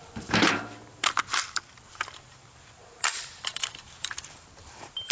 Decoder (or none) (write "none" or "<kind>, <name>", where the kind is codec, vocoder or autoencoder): vocoder, BigVGAN v2